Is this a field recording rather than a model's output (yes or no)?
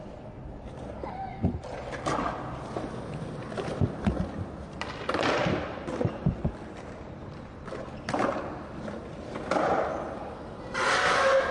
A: yes